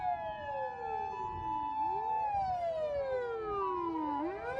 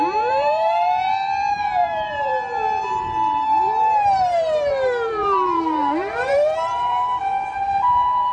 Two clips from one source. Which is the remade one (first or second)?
second